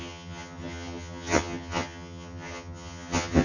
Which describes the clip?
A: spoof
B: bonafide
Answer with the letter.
A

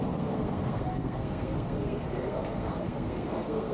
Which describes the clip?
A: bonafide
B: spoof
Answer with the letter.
B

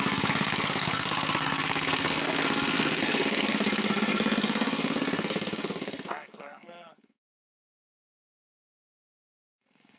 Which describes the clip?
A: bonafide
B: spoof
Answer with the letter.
B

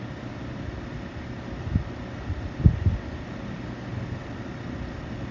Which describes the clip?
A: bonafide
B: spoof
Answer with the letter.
A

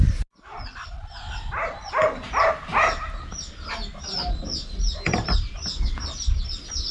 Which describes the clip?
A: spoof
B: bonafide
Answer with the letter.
B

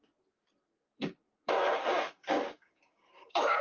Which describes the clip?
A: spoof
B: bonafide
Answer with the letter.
A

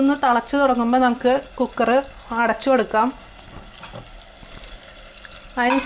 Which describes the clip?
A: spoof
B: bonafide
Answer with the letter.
B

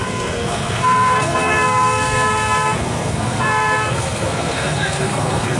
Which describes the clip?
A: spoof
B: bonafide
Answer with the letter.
A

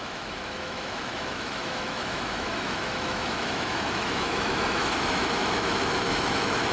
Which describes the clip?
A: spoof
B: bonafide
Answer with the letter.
A